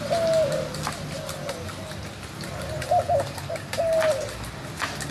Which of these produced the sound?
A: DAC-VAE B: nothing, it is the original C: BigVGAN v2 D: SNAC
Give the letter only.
B